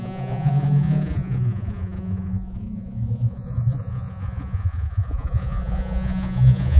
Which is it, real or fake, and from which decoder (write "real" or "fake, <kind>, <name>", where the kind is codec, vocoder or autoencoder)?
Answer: fake, vocoder, Vocos